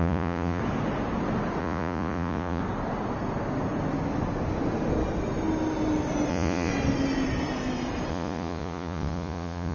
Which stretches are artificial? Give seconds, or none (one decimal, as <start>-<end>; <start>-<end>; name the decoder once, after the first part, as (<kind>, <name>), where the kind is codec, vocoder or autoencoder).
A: 0.0-0.6 (vocoder, Vocos); 1.6-2.6; 6.3-6.7; 8.1-9.7